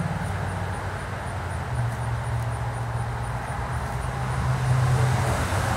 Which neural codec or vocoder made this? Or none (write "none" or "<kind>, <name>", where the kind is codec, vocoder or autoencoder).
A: none